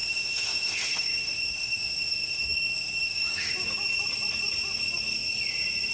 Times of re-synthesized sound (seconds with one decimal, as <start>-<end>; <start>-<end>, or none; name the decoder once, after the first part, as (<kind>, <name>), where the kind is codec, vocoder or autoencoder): 0.0-3.5 (autoencoder, DAC-VAE)